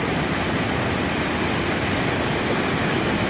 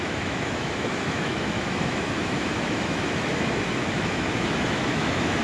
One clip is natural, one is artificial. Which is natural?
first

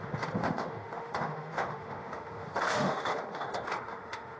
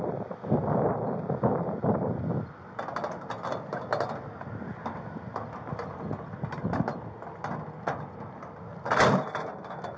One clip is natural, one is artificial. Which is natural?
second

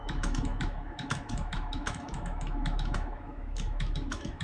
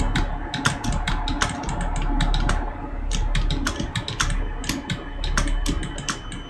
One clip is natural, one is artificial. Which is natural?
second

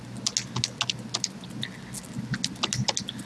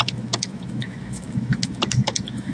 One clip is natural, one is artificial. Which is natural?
first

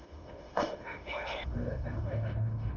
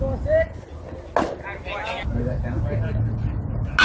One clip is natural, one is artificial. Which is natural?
second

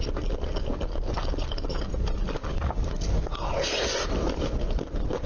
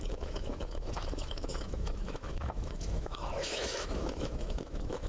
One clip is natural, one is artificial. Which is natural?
first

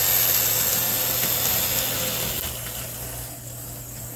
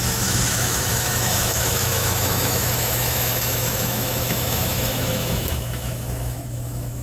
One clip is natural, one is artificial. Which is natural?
first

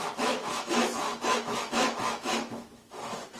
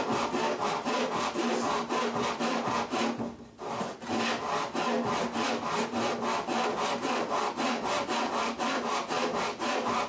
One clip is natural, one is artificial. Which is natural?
second